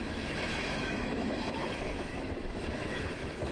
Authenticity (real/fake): fake